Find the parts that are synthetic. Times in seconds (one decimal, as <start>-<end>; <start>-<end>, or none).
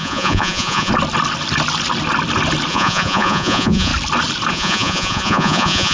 0.0-0.9; 2.7-3.9; 4.5-5.9